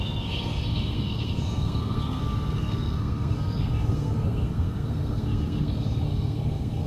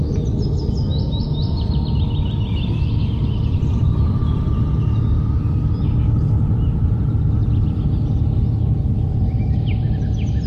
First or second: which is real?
second